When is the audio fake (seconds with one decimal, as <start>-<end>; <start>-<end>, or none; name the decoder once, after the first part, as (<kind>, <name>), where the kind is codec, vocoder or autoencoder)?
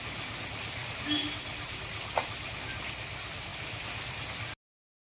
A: none